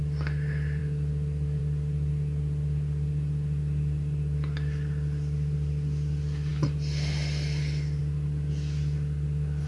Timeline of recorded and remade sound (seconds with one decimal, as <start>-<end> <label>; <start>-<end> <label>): 0.0-9.7 recorded

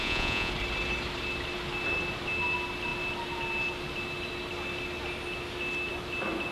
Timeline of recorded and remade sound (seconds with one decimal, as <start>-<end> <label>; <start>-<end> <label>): 0.0-0.5 remade; 0.5-6.5 recorded

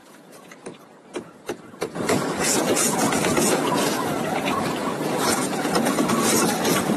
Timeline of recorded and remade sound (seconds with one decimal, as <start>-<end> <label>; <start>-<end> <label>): 0.0-4.2 remade; 4.2-4.8 recorded; 4.8-6.1 remade; 6.1-7.0 recorded

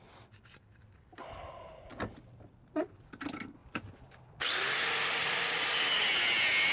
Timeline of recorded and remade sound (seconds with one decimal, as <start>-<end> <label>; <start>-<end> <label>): 0.0-6.7 recorded

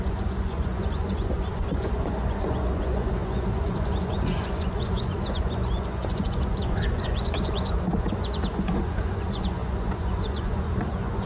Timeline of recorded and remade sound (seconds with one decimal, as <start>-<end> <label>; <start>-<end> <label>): 0.0-11.3 remade

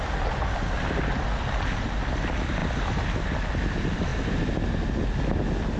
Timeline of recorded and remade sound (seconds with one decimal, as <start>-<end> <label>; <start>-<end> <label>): 0.0-5.8 recorded